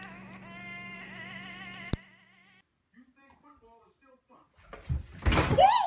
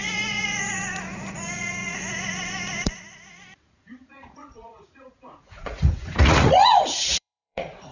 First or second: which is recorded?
first